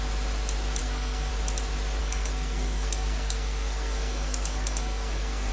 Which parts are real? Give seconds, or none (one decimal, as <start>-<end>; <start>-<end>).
0.0-0.8; 1.3-2.0